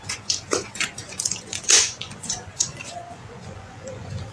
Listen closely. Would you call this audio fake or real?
fake